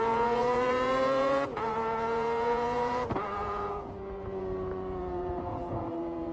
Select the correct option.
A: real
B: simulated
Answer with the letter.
B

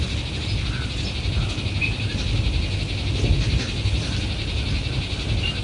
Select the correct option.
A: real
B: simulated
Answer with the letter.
A